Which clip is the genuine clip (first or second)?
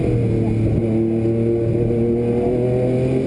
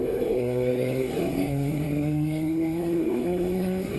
first